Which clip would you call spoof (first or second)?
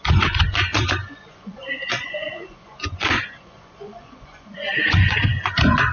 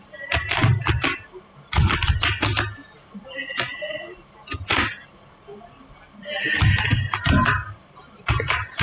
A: first